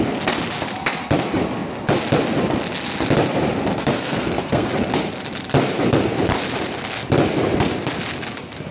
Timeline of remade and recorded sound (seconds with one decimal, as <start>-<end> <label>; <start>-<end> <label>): 0.0-3.7 recorded; 3.7-4.7 remade; 4.7-8.7 recorded